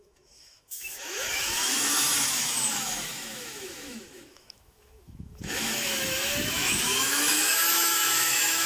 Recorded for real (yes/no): no